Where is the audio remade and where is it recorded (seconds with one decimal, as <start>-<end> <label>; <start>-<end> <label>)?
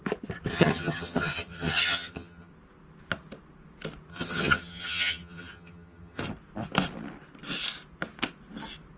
0.0-0.5 recorded; 0.5-2.5 remade; 2.5-4.1 recorded; 4.1-6.2 remade; 6.2-9.0 recorded